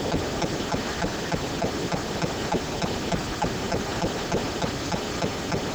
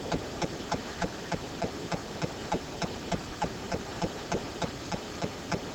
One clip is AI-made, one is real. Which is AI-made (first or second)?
second